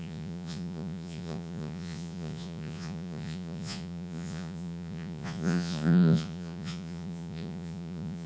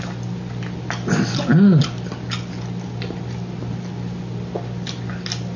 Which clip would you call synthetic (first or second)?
first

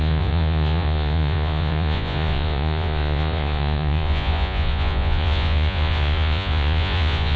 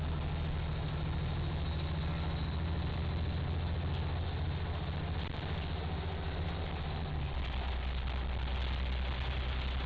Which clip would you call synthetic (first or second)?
first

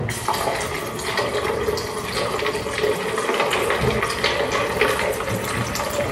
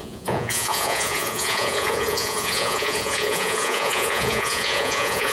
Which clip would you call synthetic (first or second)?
second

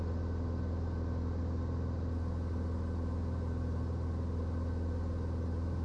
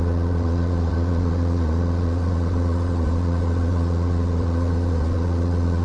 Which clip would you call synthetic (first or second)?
second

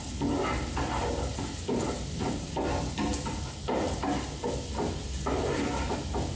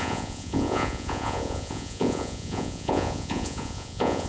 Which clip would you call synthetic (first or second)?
second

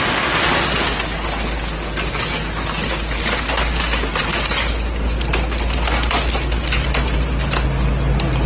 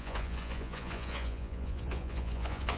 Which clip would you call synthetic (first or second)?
second